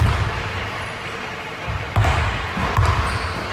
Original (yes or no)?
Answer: yes